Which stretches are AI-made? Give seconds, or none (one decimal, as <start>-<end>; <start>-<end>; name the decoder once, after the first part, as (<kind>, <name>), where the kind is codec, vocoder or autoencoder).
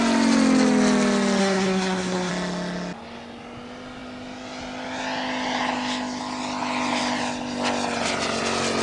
1.4-2.3 (codec, SNAC)